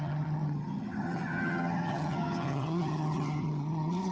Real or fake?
fake